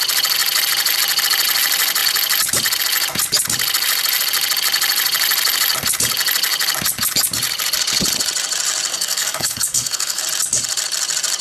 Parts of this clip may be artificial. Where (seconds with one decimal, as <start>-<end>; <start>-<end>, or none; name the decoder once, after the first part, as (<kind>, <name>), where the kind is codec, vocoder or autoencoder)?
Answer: 8.9-10.2 (codec, SNAC)